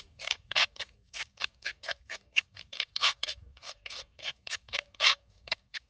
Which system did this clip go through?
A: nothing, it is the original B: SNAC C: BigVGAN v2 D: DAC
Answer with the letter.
D